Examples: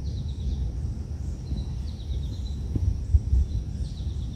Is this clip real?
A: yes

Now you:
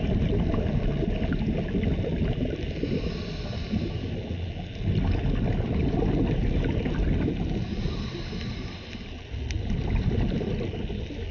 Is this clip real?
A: yes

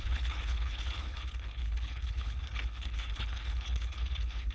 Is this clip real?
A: no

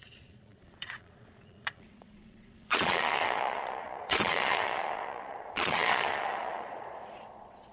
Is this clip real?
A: no